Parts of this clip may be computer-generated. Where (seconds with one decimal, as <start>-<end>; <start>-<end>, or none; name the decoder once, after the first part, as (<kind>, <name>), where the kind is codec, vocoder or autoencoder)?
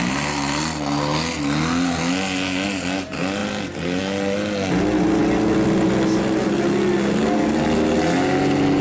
none